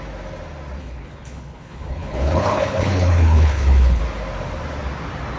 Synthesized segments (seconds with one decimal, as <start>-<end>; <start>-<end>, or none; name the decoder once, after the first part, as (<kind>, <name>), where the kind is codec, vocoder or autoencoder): 0.8-4.0 (codec, HILCodec)